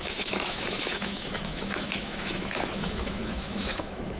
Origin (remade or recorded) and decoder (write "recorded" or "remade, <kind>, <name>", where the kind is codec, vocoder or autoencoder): remade, autoencoder, DAC-VAE